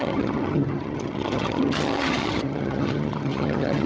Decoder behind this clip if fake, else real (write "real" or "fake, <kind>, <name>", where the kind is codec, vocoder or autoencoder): fake, vocoder, HiFi-GAN